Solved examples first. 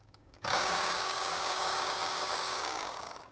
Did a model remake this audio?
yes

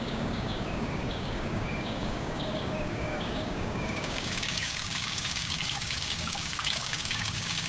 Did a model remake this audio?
yes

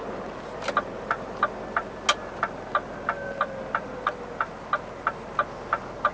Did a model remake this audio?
no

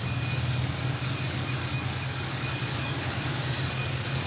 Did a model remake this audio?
yes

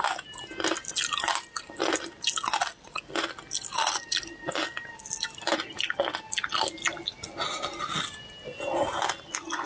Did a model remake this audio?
no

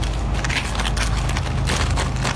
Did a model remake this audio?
no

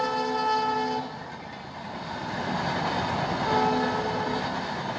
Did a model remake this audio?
no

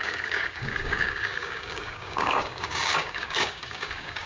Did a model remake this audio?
yes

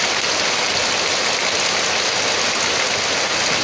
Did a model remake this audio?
no